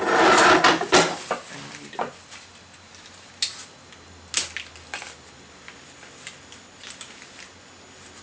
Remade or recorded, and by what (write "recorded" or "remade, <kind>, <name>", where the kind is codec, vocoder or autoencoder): recorded